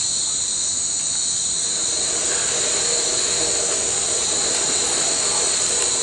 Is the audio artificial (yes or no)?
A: no